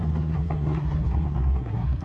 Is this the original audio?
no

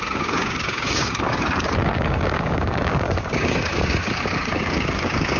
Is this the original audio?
no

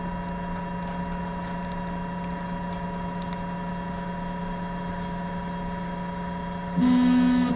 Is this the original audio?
yes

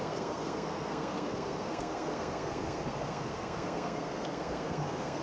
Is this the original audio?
no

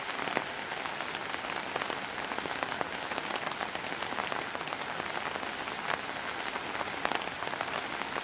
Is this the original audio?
yes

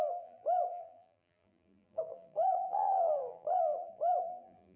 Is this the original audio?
no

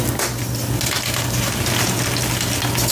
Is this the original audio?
yes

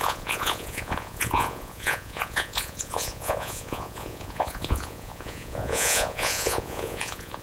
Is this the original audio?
no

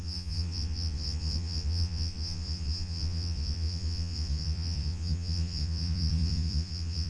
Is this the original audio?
no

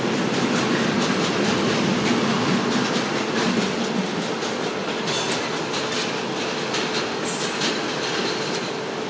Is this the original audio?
yes